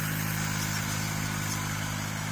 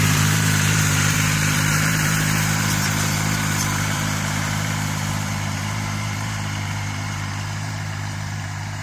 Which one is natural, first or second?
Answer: first